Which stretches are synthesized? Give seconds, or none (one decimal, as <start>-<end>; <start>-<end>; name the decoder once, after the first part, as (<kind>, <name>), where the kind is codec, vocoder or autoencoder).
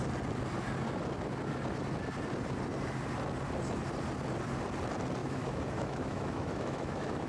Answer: 5.2-7.3 (autoencoder, DAC-VAE)